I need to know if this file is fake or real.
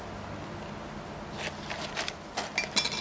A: real